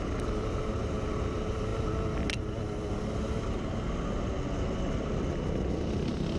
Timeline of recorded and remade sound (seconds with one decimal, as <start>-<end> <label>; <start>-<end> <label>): 0.0-6.4 recorded